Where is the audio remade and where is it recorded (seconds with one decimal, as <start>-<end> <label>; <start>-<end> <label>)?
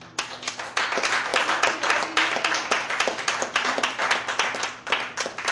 0.0-5.5 recorded